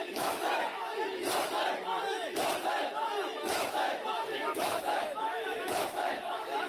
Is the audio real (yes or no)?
no